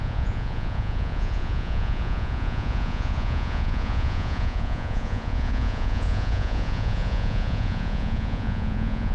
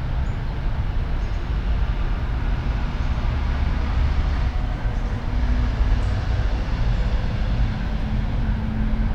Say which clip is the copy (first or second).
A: first